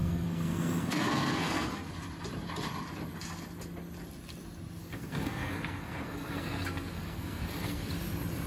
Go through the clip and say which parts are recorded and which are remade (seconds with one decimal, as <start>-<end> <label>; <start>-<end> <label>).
0.0-1.9 remade; 1.9-4.8 recorded; 4.8-7.9 remade; 7.9-8.5 recorded